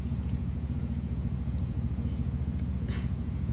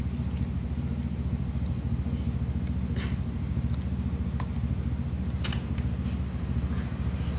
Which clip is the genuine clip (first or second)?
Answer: second